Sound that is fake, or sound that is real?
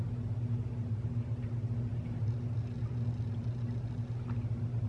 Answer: real